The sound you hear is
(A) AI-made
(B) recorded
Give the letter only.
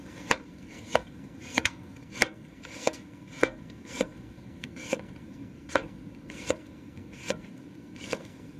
A